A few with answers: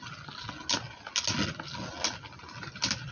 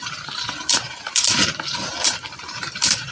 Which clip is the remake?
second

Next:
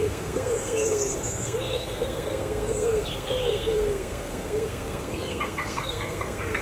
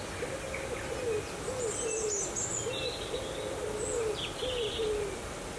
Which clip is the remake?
first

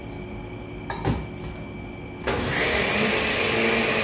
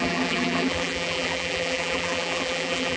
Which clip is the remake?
second